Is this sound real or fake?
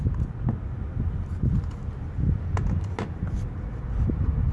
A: real